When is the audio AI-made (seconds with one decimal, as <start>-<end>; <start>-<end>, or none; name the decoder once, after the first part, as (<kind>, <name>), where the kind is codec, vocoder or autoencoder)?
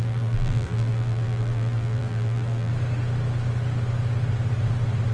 0.0-2.7 (vocoder, BigVGAN v2)